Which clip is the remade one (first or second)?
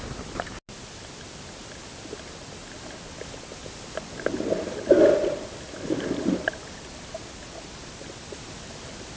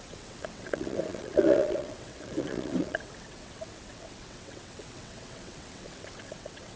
second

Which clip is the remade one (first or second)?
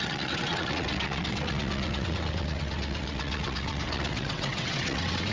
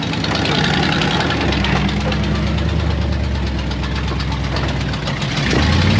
first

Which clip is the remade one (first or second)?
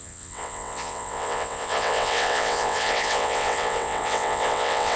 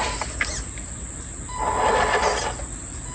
first